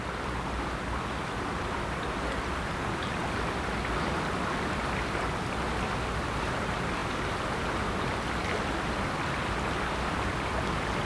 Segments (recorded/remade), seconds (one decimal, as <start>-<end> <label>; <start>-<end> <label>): 0.0-11.0 recorded